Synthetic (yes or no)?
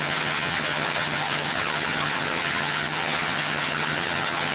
yes